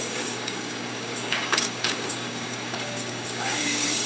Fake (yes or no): yes